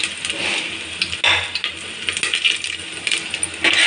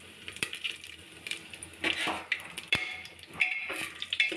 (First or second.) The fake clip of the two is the second